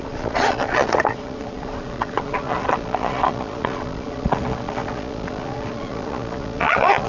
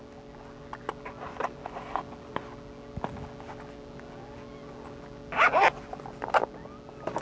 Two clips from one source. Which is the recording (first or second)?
second